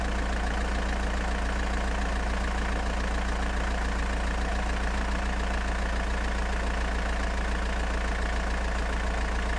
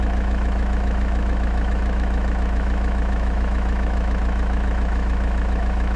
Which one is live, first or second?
first